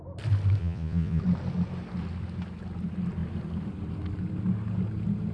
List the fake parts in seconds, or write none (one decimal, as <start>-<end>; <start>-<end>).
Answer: 0.6-1.2